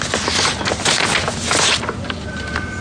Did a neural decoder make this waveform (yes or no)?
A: no